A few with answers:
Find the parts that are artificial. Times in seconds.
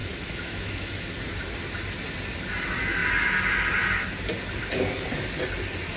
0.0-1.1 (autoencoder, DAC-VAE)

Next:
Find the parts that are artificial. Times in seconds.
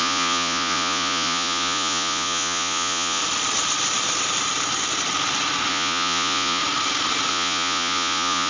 0.0-3.2 (vocoder, Vocos); 5.7-6.6; 7.3-8.5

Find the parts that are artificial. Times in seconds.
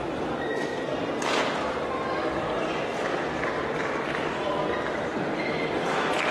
none